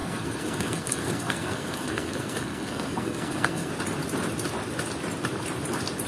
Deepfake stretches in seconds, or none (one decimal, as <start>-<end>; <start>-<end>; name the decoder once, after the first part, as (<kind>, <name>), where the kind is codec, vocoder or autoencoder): 0.0-3.7 (codec, SNAC)